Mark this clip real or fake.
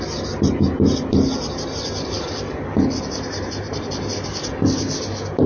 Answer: real